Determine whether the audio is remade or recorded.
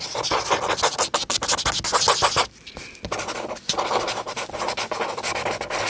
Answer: recorded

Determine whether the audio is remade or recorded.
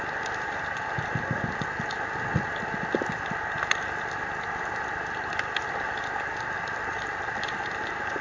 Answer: recorded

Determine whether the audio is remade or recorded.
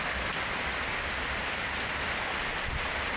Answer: recorded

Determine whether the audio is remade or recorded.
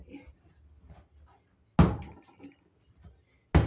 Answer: recorded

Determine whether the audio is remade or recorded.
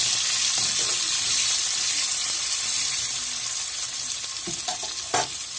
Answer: recorded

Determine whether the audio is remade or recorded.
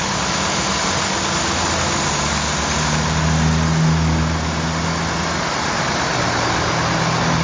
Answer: recorded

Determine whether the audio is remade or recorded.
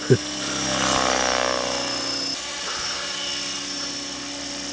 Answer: recorded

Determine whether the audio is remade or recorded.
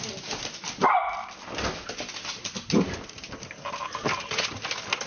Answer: recorded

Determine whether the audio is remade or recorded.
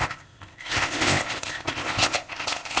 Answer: remade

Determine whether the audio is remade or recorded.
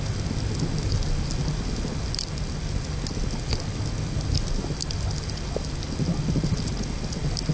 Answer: recorded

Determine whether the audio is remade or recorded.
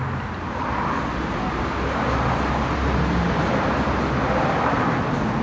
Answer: recorded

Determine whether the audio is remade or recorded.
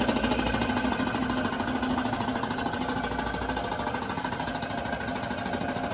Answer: recorded